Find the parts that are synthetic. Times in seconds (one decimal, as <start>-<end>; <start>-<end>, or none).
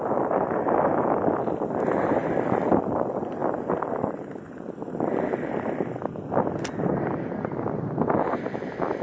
none